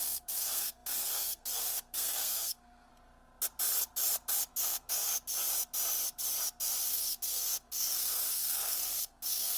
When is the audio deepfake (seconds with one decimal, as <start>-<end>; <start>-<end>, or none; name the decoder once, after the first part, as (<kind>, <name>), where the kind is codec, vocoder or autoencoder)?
0.0-2.9 (codec, SNAC); 4.5-5.1; 6.8-9.6